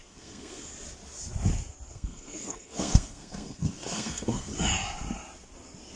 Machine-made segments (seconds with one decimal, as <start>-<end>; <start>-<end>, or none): 0.0-0.7; 1.9-4.5